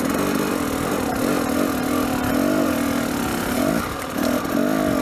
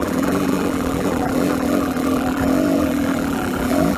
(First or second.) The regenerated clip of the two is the second